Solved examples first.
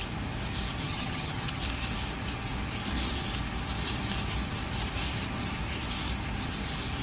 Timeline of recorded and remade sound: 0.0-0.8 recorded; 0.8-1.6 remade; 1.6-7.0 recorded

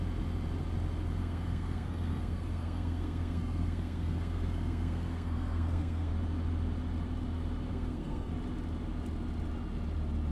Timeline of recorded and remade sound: 0.0-1.2 recorded; 1.2-6.1 remade; 6.1-7.7 recorded; 7.7-8.3 remade; 8.3-10.3 recorded

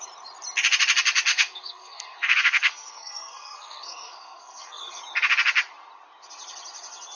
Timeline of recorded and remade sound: 0.0-1.3 recorded; 1.3-5.0 remade; 5.0-7.1 recorded

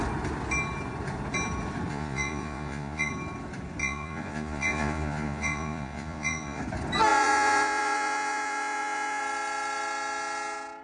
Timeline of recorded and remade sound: 0.0-1.9 recorded; 1.9-3.1 remade; 3.1-3.8 recorded; 3.8-6.6 remade; 6.6-7.1 recorded; 7.1-9.2 remade; 9.2-10.8 recorded

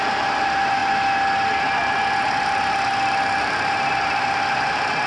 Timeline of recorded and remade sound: 0.0-5.1 recorded

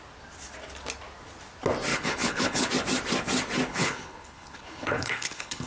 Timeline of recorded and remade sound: 0.0-1.9 recorded; 1.9-2.7 remade; 2.7-3.7 recorded; 3.7-5.7 remade

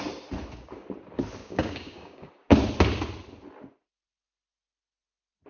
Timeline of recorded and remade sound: 0.0-1.4 recorded; 1.4-2.3 remade; 2.3-5.5 recorded

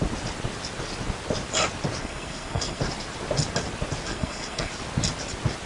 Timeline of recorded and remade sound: 0.0-2.0 recorded; 2.0-2.8 remade; 2.8-4.1 recorded; 4.1-4.7 remade; 4.7-5.7 recorded